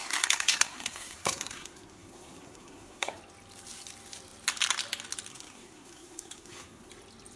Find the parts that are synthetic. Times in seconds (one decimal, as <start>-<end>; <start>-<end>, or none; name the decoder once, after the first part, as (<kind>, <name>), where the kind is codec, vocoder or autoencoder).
0.0-3.2 (codec, SNAC); 5.3-6.9